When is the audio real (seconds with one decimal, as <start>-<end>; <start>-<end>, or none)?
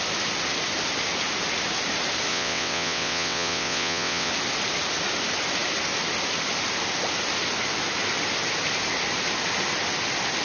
0.0-2.3; 4.3-10.4